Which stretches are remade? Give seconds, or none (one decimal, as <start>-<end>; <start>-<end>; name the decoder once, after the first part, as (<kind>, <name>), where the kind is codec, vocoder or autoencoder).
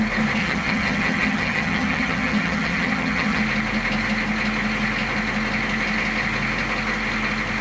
0.4-3.4 (vocoder, HiFi-GAN)